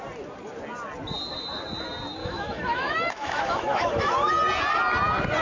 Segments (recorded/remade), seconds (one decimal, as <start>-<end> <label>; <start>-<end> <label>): 0.0-2.2 recorded; 2.2-4.3 remade; 4.3-5.4 recorded